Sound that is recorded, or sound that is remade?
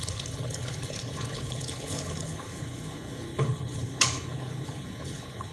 remade